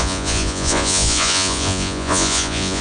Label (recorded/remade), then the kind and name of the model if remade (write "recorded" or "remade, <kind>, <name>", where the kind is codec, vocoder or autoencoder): remade, vocoder, Vocos